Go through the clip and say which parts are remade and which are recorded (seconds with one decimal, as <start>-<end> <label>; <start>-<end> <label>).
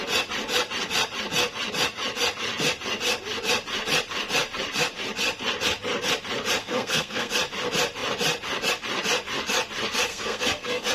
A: 0.0-6.6 recorded; 6.6-7.3 remade; 7.3-10.1 recorded; 10.1-10.9 remade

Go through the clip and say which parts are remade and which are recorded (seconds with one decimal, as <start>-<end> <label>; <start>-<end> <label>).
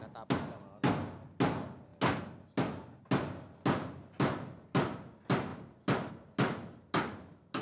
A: 0.0-7.6 recorded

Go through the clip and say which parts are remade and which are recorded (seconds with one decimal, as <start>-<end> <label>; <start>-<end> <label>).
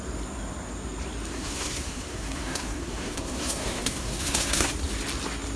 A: 0.0-1.3 recorded; 1.3-4.7 remade; 4.7-5.6 recorded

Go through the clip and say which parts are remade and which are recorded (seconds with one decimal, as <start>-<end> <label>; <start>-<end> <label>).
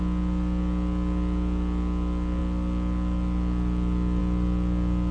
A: 0.0-5.1 recorded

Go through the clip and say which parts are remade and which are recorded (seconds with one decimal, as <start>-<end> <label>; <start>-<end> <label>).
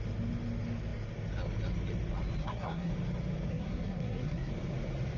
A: 0.0-2.4 recorded; 2.4-2.9 remade; 2.9-3.5 recorded; 3.5-4.5 remade; 4.5-5.2 recorded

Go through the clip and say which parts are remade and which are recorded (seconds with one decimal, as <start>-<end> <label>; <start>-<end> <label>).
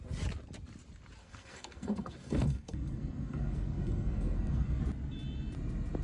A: 0.0-1.2 recorded; 1.2-4.8 remade; 4.8-6.0 recorded